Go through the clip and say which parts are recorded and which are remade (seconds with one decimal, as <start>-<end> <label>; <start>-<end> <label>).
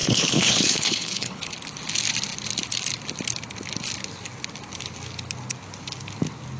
0.0-1.5 remade; 1.5-6.6 recorded